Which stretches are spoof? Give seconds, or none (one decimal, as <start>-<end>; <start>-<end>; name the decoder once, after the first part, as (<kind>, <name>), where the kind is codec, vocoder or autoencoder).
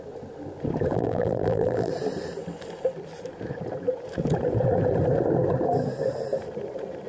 0.9-1.9 (vocoder, BigVGAN v2)